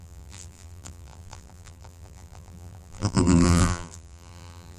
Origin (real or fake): fake